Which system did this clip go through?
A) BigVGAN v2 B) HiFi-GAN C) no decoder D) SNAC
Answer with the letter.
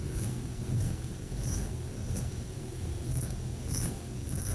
D